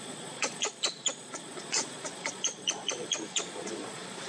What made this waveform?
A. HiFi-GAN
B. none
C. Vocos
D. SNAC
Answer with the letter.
C